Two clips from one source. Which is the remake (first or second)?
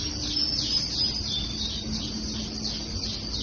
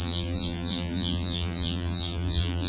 second